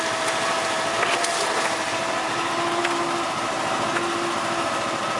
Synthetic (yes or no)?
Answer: no